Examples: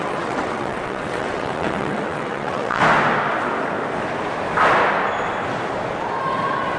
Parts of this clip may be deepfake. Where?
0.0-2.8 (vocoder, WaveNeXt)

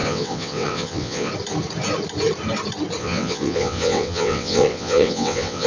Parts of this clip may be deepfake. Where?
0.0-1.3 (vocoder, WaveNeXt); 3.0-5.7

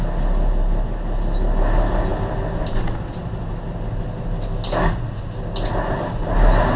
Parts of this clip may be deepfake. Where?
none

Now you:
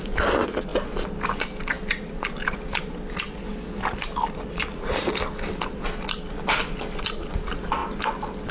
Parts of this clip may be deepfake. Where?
none

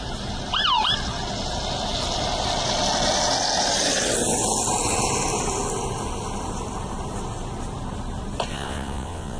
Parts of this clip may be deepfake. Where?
8.5-9.4 (vocoder, WaveNeXt)

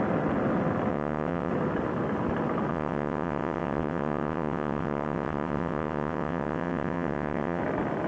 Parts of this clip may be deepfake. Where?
0.9-1.5 (vocoder, WaveNeXt); 2.7-7.6

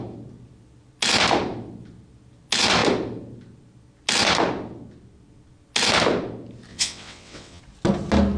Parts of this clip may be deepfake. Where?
6.7-7.6 (vocoder, WaveNeXt)

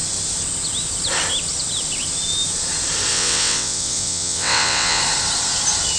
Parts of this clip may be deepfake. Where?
3.1-5.0 (vocoder, WaveNeXt)